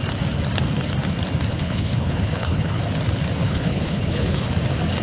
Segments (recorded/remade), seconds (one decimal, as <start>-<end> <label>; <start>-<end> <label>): 0.0-1.5 recorded; 1.5-2.8 remade; 2.8-3.4 recorded; 3.4-4.5 remade; 4.5-5.0 recorded